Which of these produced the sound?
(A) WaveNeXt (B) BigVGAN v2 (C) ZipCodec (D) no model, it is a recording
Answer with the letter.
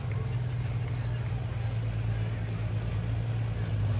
D